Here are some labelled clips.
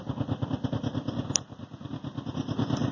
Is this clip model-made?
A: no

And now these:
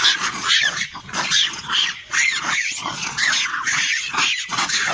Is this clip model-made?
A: yes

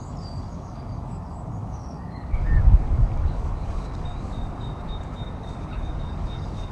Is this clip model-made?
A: yes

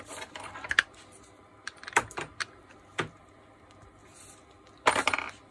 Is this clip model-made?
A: yes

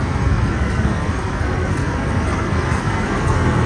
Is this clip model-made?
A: yes